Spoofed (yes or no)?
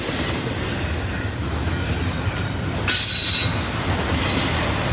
no